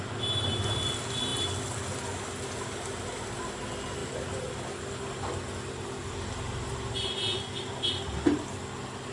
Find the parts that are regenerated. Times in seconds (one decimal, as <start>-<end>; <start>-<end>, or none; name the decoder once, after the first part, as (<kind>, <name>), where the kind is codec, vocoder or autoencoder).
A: none